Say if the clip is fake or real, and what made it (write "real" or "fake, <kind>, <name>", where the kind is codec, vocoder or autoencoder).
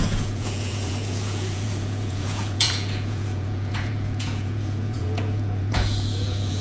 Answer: fake, vocoder, Vocos